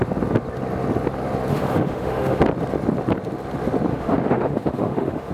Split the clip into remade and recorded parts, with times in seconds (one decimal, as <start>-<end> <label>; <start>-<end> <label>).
0.0-1.5 recorded; 1.5-2.4 remade; 2.4-3.9 recorded; 3.9-5.3 remade